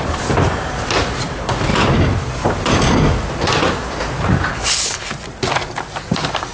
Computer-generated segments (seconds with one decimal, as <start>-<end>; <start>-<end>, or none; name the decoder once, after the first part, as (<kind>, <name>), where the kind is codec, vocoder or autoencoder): 4.5-5.1 (codec, HILCodec)